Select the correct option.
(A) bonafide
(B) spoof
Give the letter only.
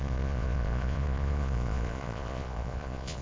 B